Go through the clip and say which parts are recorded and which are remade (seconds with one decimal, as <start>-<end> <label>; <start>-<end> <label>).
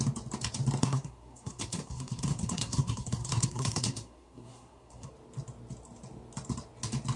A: 0.0-0.8 recorded; 0.8-5.1 remade; 5.1-7.2 recorded